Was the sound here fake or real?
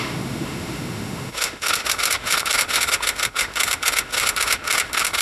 fake